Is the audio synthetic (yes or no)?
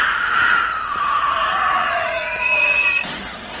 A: yes